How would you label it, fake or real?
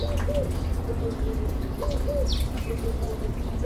real